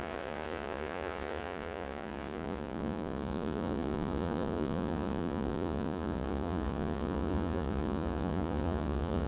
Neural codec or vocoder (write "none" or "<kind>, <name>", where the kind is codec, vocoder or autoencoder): vocoder, Vocos